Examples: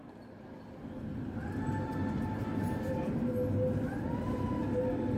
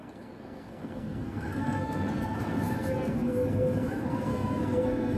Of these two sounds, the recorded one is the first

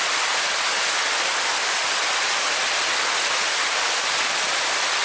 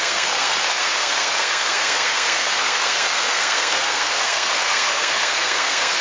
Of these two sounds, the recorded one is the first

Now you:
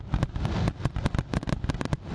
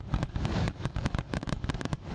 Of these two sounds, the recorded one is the first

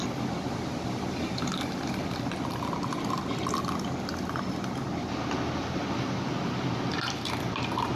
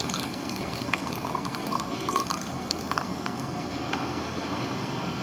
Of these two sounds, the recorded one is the first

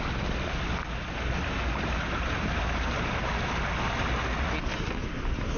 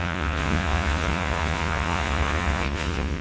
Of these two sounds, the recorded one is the first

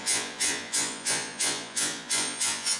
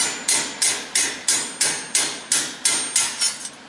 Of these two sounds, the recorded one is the second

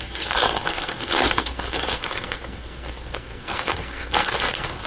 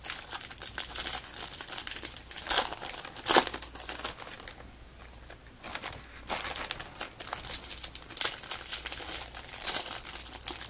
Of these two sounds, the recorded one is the second